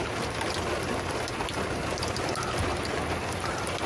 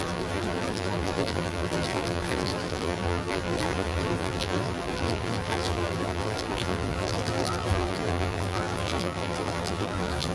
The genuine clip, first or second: first